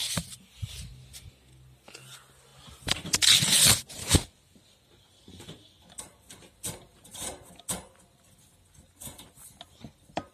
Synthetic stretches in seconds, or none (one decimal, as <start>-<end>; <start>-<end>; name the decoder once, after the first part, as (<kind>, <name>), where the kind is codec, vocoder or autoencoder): 6.9-7.6 (vocoder, BigVGAN v2)